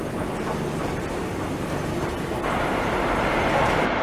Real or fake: real